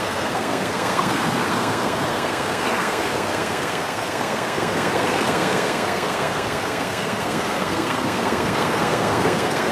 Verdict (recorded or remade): remade